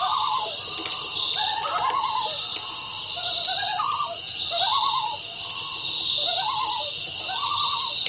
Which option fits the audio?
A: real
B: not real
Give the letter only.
A